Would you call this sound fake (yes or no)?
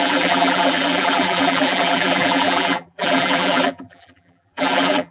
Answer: yes